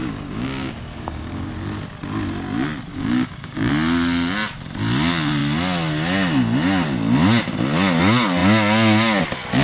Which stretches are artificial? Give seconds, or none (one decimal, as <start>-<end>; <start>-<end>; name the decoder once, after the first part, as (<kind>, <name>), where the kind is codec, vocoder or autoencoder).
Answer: 0.0-1.5 (codec, DAC); 2.9-3.7